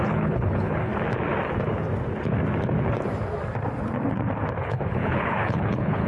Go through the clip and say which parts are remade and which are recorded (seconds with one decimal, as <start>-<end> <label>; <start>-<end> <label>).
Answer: 0.0-0.9 remade; 0.9-4.6 recorded; 4.6-6.1 remade